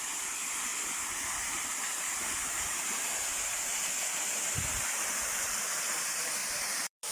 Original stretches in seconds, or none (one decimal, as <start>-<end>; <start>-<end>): 0.0-6.4